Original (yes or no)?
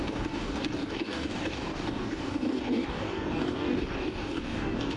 no